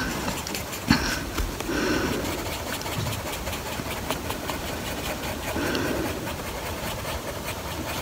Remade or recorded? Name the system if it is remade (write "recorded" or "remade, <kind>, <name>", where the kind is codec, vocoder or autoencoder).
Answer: remade, vocoder, BigVGAN v2